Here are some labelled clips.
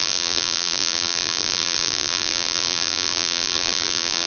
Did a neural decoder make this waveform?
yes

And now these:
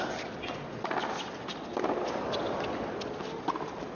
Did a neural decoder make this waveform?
no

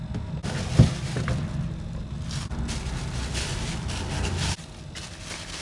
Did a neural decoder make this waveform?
no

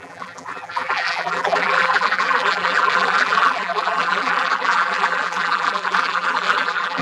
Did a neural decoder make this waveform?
yes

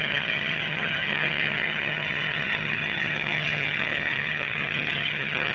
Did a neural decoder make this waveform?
yes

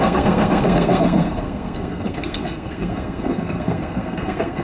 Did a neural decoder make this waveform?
yes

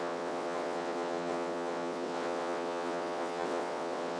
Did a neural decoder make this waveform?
yes